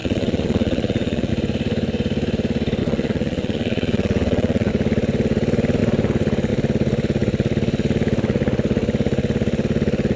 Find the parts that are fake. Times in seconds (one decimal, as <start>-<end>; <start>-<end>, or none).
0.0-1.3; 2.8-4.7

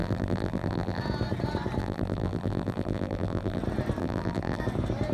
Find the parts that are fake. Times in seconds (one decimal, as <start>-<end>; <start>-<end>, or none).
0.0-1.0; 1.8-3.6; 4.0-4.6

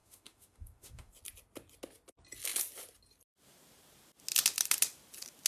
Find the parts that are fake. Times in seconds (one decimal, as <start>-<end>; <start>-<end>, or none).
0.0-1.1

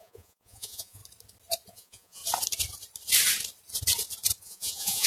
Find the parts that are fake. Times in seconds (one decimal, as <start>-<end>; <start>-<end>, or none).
0.0-1.0; 1.7-2.2; 4.4-5.1

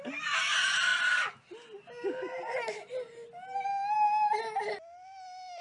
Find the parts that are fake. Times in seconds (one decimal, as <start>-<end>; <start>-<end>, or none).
none